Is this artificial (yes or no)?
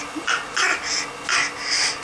no